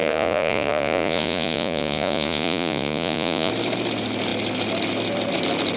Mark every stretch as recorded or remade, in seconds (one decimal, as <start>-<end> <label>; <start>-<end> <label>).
0.0-3.5 remade; 3.5-5.8 recorded